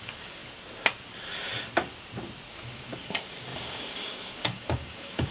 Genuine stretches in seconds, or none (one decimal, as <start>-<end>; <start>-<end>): 0.4-2.5